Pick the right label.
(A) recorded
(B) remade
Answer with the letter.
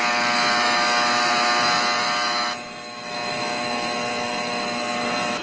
B